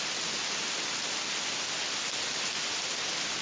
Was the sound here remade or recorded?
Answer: recorded